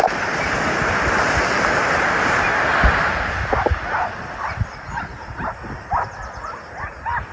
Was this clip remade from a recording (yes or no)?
no